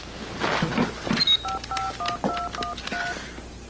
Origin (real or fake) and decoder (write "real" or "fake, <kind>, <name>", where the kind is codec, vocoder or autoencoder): real